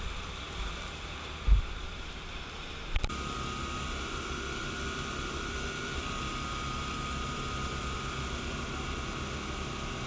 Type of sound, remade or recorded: remade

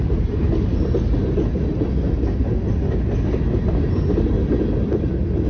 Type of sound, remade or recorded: recorded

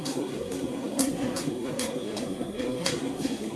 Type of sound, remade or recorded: remade